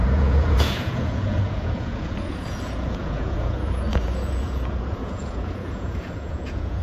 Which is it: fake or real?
fake